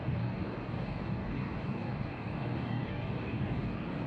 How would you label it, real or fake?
fake